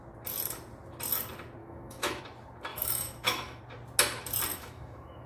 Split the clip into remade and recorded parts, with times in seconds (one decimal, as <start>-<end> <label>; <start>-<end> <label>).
0.0-1.6 recorded; 1.6-2.2 remade; 2.2-2.7 recorded; 2.7-3.6 remade; 3.6-4.5 recorded; 4.5-5.3 remade